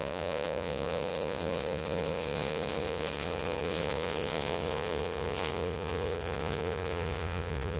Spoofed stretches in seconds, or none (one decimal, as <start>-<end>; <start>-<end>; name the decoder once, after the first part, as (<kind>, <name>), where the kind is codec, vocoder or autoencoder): 0.0-7.8 (vocoder, Vocos)